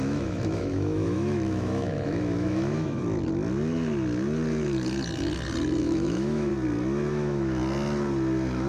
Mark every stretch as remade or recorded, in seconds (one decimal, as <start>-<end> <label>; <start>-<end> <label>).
0.0-3.0 remade; 3.0-5.8 recorded; 5.8-6.5 remade; 6.5-7.1 recorded; 7.1-7.6 remade; 7.6-8.7 recorded